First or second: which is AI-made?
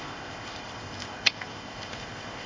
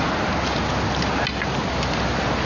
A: first